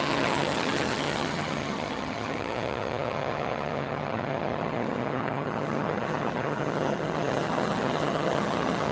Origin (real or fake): fake